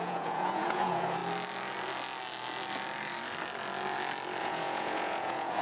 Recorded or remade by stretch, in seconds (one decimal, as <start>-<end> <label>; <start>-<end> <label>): 0.0-1.2 remade; 1.2-4.4 recorded; 4.4-5.6 remade